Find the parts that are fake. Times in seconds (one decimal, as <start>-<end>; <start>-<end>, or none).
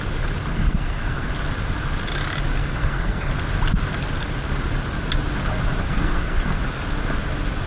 0.5-1.3; 2.6-3.3; 5.8-6.6